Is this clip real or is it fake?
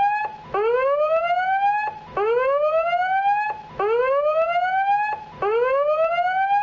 real